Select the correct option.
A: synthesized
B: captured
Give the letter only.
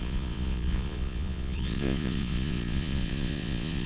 A